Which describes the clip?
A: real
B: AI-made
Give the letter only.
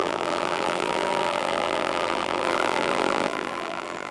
B